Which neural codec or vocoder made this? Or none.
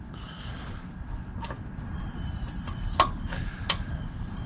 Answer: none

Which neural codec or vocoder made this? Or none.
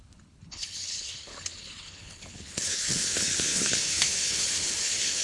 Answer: codec, HILCodec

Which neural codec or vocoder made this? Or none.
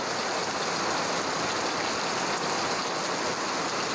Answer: none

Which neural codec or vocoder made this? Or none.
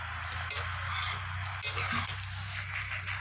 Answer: none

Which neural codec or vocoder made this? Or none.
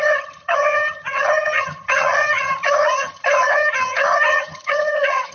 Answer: vocoder, HiFi-GAN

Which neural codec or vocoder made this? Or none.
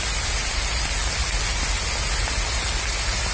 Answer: none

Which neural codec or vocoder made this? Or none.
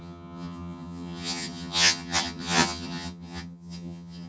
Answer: vocoder, HiFi-GAN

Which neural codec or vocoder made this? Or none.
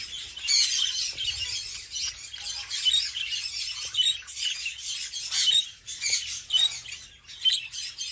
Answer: none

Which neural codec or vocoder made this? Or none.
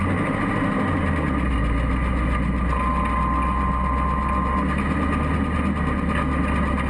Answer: none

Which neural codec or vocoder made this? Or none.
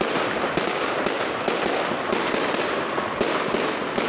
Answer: none